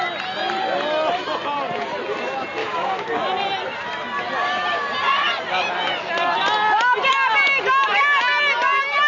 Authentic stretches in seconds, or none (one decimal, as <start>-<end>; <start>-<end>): 0.0-2.6; 3.2-9.1